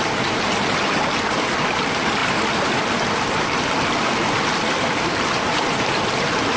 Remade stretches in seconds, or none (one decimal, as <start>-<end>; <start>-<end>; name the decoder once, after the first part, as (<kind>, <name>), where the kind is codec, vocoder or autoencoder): 2.2-5.9 (vocoder, BigVGAN v2)